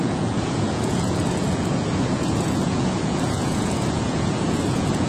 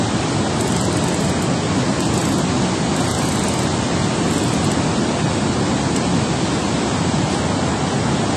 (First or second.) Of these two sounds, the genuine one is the second